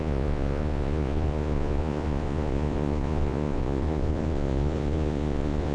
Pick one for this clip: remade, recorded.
remade